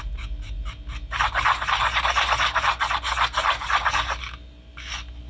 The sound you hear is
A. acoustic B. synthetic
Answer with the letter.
A